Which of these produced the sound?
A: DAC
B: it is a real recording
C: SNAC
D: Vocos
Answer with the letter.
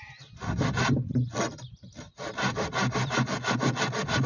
B